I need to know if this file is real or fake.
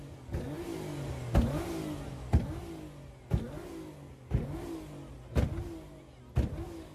real